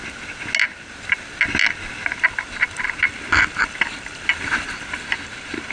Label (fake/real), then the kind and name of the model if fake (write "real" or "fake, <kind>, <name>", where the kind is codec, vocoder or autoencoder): real